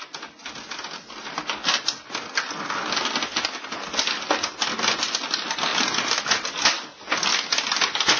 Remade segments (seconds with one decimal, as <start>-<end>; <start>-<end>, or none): none